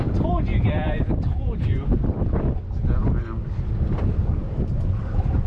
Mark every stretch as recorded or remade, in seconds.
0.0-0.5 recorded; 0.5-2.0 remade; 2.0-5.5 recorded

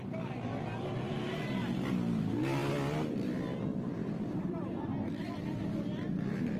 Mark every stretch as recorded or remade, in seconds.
0.0-0.7 recorded; 0.7-1.3 remade; 1.3-4.0 recorded; 4.0-5.3 remade; 5.3-6.6 recorded

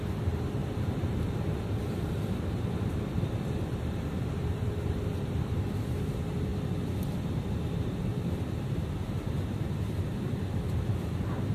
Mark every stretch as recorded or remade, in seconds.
0.0-6.5 remade; 6.5-7.2 recorded; 7.2-11.5 remade

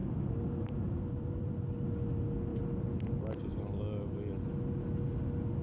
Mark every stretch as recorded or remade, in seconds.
0.0-1.5 remade; 1.5-2.5 recorded; 2.5-3.8 remade; 3.8-5.6 recorded